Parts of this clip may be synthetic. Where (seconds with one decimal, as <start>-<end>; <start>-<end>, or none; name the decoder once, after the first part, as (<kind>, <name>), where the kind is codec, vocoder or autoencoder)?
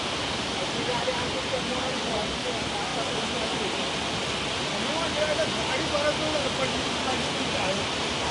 none